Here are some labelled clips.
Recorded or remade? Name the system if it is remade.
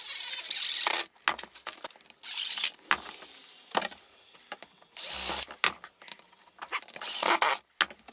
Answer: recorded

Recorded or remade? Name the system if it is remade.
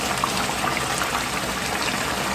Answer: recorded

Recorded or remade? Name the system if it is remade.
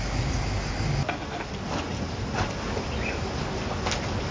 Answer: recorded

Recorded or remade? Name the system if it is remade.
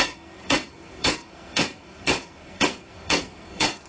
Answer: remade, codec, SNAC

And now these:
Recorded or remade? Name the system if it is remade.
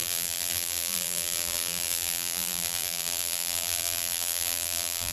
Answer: remade, vocoder, BigVGAN v2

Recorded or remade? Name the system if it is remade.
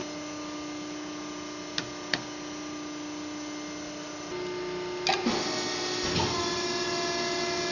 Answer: recorded